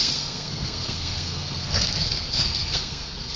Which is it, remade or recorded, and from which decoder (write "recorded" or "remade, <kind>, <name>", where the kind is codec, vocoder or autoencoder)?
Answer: remade, codec, SNAC